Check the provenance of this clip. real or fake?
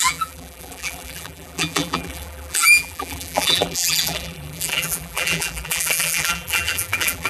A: fake